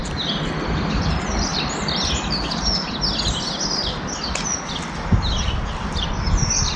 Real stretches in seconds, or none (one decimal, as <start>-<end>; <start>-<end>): 0.0-6.8